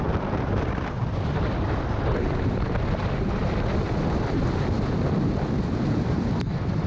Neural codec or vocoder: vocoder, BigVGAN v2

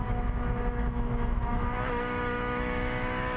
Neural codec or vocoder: autoencoder, DAC-VAE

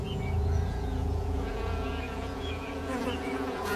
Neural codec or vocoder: vocoder, Vocos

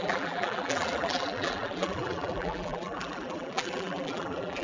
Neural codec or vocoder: vocoder, BigVGAN v2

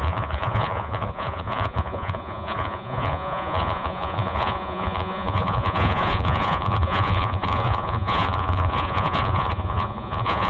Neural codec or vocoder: vocoder, Vocos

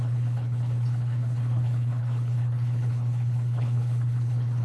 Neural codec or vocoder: codec, HILCodec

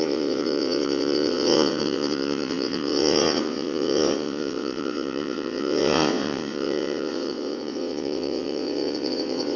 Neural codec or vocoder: vocoder, WaveNeXt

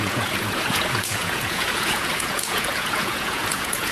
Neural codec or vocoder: vocoder, Vocos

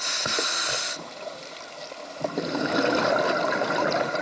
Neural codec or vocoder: none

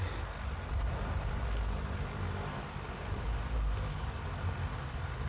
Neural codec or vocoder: none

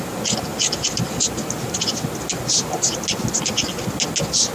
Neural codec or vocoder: none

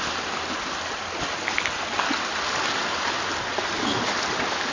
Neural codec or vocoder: none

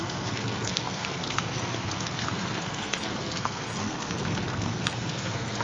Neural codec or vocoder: codec, SNAC